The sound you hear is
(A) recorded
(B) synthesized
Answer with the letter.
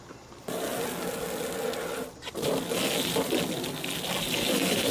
A